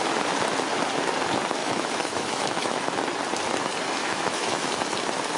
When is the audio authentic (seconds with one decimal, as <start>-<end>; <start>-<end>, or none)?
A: 0.0-1.6; 3.0-4.0; 4.7-5.4